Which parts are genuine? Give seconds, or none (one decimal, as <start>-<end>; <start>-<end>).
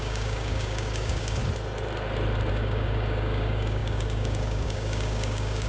1.4-2.5